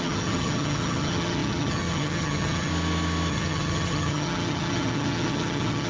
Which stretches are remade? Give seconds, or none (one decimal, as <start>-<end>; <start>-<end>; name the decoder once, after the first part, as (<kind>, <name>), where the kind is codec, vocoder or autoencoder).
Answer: 0.0-2.7 (vocoder, HiFi-GAN); 3.3-5.9